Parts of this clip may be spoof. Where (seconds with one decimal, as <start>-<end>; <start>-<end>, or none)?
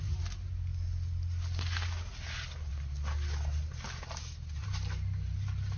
none